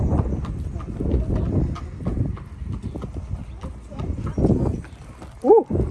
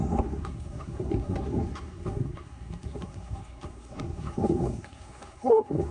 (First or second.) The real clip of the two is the first